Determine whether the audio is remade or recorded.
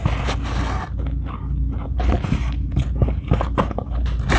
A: recorded